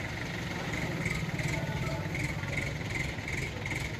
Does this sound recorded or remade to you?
recorded